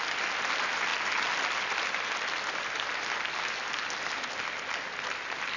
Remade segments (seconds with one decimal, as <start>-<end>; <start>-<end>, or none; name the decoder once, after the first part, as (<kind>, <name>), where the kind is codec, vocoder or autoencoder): none